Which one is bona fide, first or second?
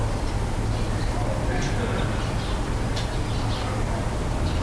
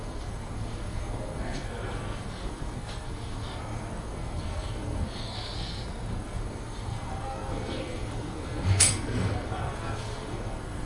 first